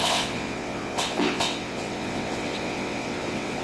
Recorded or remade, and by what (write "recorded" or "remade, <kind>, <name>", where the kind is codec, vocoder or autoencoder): remade, vocoder, WaveNeXt